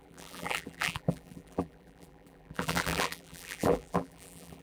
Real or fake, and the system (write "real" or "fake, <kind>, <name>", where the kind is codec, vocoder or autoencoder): fake, vocoder, BigVGAN v2